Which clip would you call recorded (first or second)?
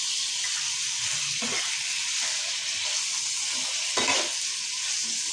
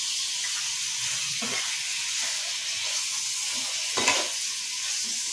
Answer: first